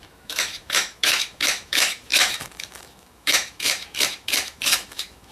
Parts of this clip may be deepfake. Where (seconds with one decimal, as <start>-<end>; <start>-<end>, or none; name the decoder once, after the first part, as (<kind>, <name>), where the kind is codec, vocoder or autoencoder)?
0.0-5.3 (autoencoder, DAC-VAE)